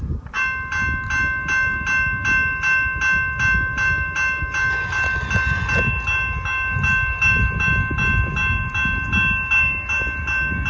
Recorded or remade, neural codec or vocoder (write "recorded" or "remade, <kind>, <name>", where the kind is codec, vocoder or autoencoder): recorded